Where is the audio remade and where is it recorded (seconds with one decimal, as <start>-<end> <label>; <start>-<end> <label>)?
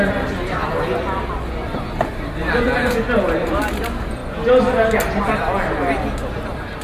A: 0.0-6.8 recorded